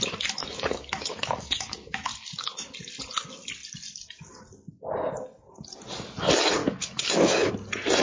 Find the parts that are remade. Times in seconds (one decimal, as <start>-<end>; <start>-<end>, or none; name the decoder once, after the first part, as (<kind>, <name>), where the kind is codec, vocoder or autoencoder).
0.4-2.1 (autoencoder, DAC-VAE); 6.6-7.5